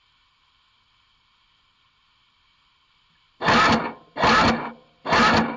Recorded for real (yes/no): yes